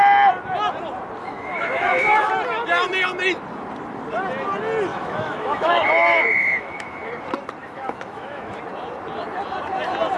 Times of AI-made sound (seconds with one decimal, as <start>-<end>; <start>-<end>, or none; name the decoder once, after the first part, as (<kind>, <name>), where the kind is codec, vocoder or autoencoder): 1.2-2.3 (autoencoder, DAC-VAE); 4.9-7.1; 7.6-8.6